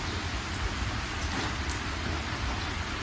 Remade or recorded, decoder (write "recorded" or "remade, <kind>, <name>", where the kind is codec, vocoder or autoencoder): recorded